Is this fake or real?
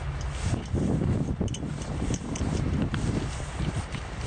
real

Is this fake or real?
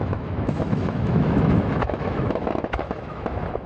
fake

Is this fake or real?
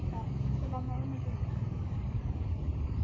fake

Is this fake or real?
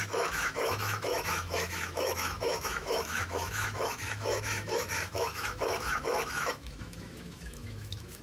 fake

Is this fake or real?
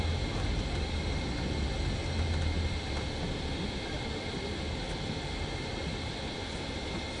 real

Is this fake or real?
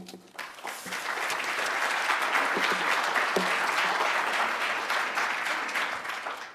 real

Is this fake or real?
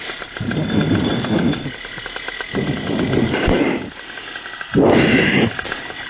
real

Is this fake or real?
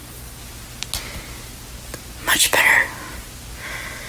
real